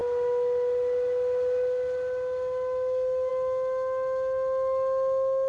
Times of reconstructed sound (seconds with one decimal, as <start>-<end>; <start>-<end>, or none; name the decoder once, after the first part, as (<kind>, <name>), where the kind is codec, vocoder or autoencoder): none